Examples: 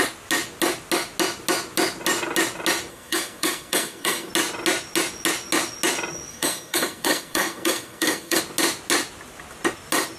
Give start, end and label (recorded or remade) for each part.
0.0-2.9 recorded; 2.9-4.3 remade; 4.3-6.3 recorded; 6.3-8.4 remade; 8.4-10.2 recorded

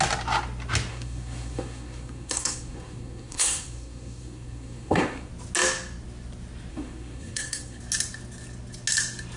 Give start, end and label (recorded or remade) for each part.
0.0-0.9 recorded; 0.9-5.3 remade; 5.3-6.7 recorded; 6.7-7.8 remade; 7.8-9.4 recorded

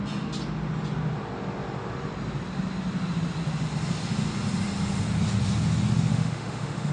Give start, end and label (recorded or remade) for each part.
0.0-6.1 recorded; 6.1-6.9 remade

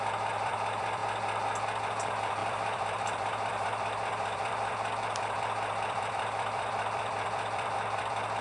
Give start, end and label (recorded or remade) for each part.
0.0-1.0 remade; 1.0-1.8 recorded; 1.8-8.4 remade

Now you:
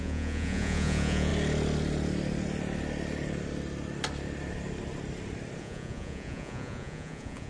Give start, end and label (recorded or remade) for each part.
0.0-1.3 remade; 1.3-5.6 recorded; 5.6-7.5 remade

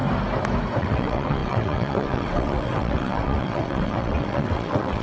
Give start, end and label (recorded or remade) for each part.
0.0-0.8 recorded; 0.8-5.0 remade